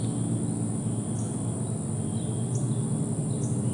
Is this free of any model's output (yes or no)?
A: yes